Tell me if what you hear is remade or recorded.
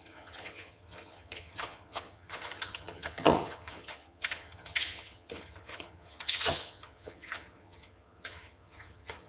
remade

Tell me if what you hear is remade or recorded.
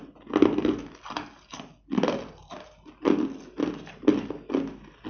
recorded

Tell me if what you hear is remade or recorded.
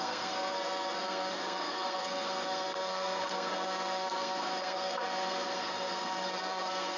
remade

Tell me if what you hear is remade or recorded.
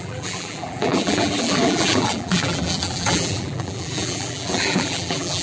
remade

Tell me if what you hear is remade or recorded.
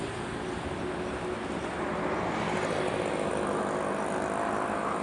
recorded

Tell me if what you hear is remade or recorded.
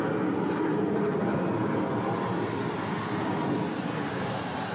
recorded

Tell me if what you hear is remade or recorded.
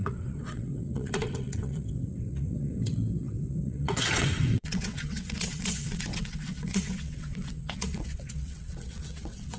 remade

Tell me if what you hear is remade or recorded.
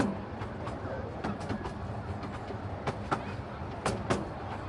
recorded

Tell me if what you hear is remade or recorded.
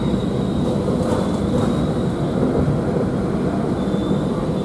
recorded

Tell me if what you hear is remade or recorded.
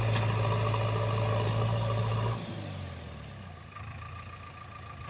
recorded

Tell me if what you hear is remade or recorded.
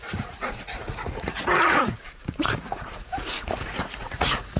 remade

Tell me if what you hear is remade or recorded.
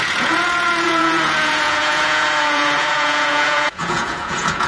remade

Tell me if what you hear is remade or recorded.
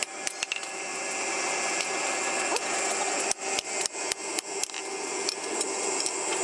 recorded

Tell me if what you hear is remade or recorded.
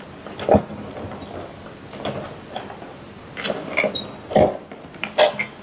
recorded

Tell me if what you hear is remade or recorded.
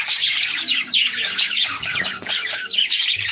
remade